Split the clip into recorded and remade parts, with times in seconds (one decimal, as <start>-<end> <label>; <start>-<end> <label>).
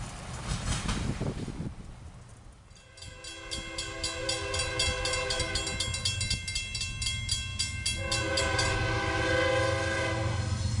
0.0-10.8 recorded